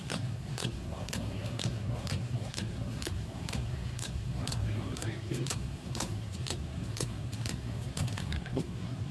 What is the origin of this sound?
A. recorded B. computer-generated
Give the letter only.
B